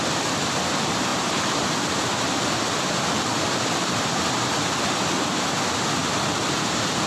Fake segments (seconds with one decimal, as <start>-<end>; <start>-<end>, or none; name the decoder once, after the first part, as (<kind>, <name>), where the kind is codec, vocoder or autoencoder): none